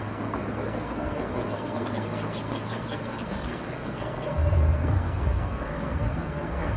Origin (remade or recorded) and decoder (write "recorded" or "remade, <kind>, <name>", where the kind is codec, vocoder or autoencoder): remade, codec, SNAC